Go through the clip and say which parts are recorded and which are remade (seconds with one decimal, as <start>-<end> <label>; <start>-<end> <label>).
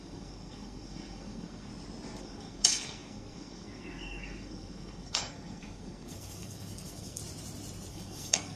0.0-1.7 remade; 1.7-2.2 recorded; 2.2-7.2 remade; 7.2-7.9 recorded; 7.9-8.6 remade